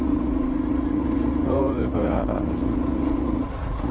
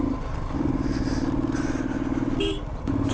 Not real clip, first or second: first